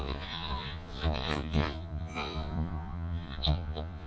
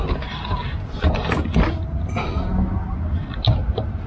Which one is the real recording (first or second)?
second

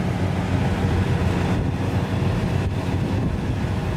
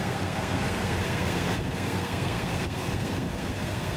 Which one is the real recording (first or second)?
first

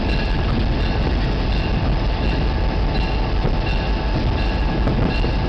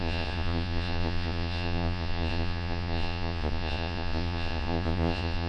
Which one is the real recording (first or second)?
first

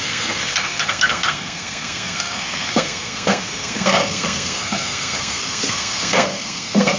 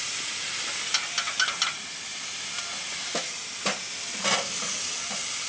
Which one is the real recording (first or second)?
second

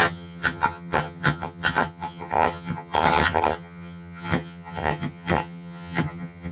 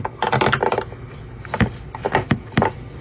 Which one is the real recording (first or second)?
second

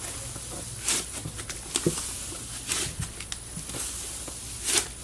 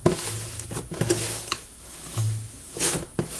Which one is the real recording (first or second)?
first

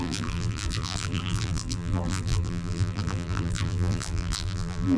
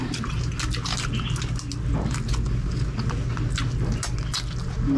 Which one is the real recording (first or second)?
second